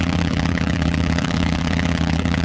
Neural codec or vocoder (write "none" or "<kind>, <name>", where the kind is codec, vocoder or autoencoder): vocoder, BigVGAN v2